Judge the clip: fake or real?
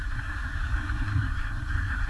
fake